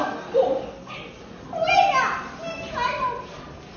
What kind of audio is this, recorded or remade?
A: recorded